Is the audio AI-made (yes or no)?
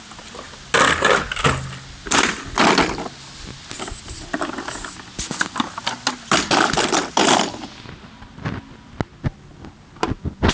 no